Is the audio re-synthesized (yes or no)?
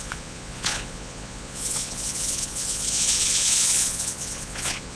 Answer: yes